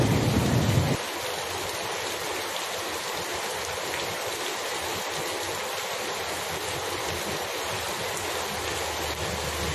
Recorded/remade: recorded